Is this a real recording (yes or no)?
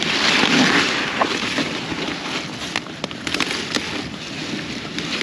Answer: yes